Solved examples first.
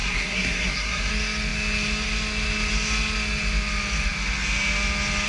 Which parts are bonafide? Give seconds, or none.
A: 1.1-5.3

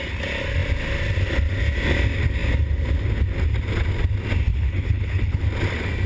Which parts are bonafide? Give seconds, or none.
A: 0.0-4.5; 5.4-6.1